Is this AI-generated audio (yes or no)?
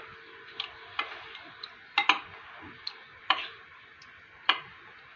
yes